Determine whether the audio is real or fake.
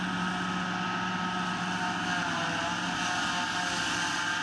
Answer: real